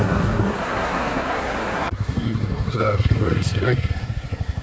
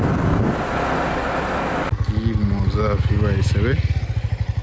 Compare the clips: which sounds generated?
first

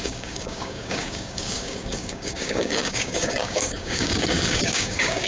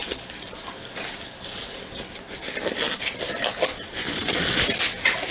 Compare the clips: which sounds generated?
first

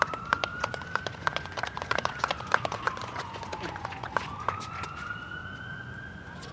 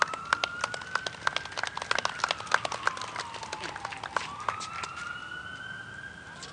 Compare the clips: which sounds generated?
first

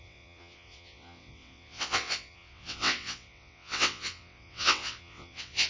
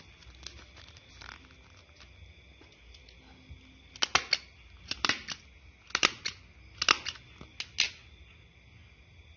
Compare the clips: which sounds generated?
first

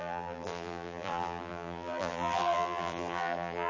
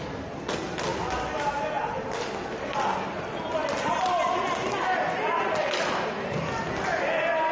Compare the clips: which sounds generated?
first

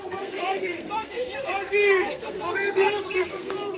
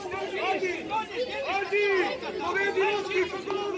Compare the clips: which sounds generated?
first